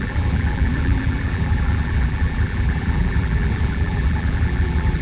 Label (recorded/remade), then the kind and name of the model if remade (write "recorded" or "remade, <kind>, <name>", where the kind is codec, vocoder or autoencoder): remade, vocoder, BigVGAN v2